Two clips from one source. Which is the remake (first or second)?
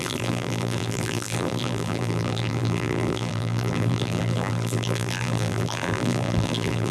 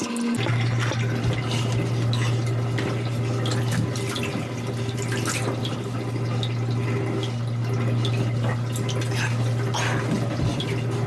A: first